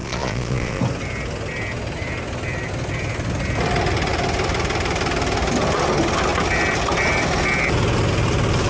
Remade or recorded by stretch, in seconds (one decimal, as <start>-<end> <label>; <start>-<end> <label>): 0.0-0.8 remade; 0.8-8.7 recorded